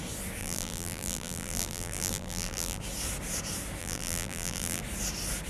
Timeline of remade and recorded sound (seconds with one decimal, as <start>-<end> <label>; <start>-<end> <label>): 0.0-0.4 recorded; 0.4-2.8 remade; 2.8-3.8 recorded; 3.8-4.8 remade; 4.8-5.5 recorded